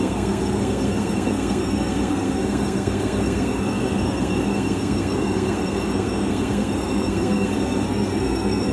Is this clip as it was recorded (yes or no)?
no